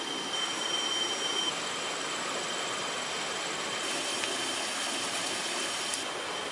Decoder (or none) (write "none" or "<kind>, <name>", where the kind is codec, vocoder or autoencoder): none